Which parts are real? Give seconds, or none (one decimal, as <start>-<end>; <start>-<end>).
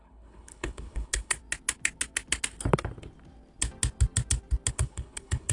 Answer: 1.4-4.7